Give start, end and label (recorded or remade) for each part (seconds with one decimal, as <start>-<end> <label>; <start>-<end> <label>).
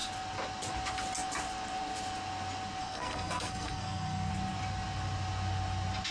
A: 0.0-2.8 recorded; 2.8-4.3 remade; 4.3-6.1 recorded